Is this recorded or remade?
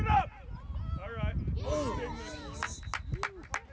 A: recorded